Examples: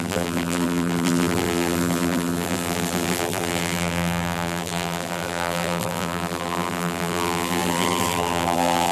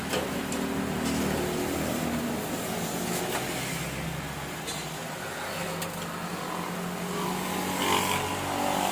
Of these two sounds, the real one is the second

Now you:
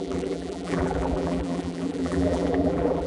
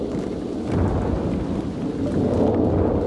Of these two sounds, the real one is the second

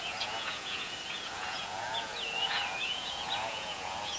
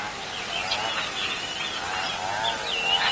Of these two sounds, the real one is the second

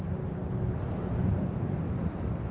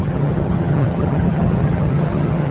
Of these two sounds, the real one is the first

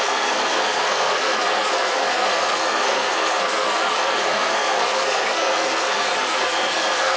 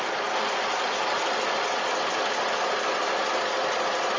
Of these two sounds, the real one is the second